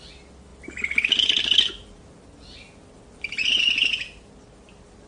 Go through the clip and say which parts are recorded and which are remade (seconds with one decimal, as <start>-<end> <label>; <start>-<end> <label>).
0.0-5.1 recorded